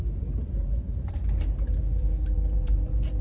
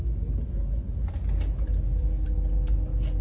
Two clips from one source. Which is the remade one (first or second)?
first